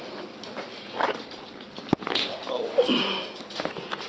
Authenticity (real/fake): real